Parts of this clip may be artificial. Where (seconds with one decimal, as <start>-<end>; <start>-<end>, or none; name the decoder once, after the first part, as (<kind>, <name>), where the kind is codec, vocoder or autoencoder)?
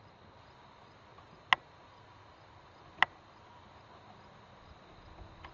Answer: none